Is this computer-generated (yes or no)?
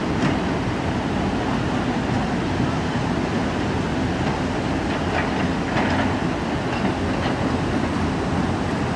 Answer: no